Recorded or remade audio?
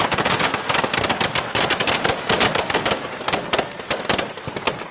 recorded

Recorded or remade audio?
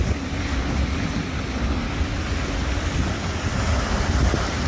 recorded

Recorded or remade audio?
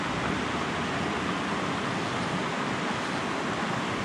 recorded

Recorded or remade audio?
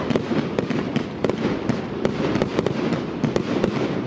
remade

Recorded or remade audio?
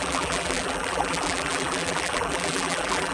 remade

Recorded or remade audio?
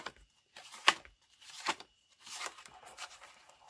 remade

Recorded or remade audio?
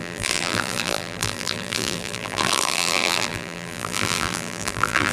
remade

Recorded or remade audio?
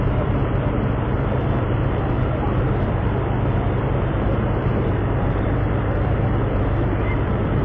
remade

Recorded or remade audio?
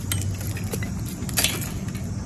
recorded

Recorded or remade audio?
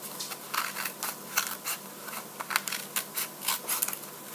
recorded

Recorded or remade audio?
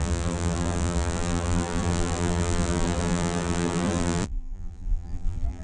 remade